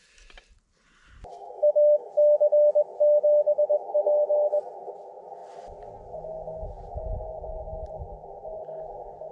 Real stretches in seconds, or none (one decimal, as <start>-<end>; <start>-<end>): 0.0-1.3; 2.1-9.3